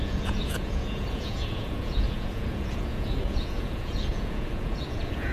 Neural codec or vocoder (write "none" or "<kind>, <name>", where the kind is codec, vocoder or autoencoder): vocoder, Vocos